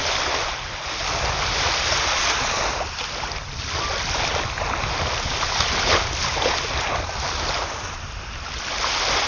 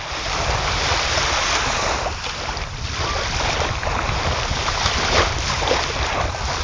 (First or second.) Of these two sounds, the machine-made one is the second